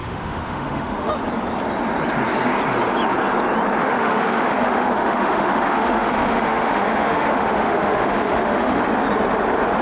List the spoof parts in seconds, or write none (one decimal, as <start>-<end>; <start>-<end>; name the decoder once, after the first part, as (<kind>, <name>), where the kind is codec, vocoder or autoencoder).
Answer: 0.0-1.1 (autoencoder, DAC-VAE); 3.8-8.8